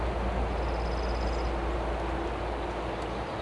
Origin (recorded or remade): recorded